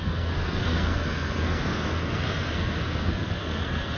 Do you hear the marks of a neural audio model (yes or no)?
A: yes